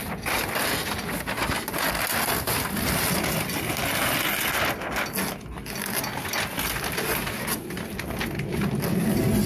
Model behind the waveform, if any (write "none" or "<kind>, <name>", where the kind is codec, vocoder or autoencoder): none